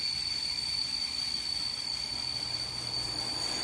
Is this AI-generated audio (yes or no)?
no